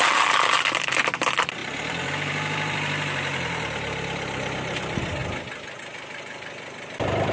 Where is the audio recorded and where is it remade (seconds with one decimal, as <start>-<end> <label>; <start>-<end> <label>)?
0.0-5.2 remade; 5.2-5.8 recorded; 5.8-7.3 remade